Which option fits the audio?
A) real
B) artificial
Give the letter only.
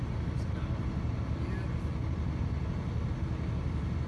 A